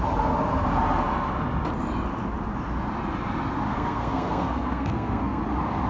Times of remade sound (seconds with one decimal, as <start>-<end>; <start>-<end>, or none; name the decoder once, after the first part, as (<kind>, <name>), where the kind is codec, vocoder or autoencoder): 3.7-5.4 (codec, SNAC)